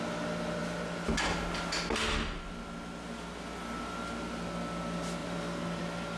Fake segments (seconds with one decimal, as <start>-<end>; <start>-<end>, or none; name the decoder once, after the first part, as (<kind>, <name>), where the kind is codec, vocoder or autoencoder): none